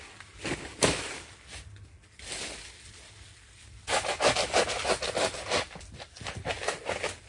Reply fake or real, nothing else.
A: real